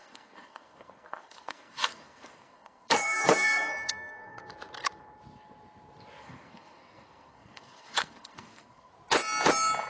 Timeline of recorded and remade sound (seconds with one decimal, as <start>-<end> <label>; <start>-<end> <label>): 0.0-4.5 remade; 4.5-6.2 recorded; 6.2-8.9 remade; 8.9-9.9 recorded